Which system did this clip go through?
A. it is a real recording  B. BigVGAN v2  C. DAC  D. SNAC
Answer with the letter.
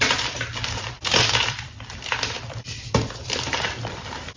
B